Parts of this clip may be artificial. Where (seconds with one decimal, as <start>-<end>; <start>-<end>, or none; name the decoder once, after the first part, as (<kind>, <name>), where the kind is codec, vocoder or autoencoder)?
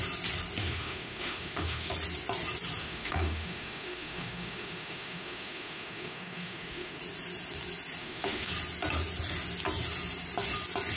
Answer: 0.6-1.9 (autoencoder, DAC-VAE); 2.8-7.0; 8.0-8.5